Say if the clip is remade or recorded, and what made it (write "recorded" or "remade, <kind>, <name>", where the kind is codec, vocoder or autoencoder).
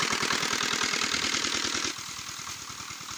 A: recorded